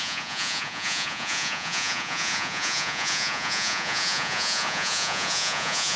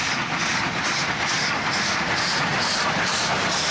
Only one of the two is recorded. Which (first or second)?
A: second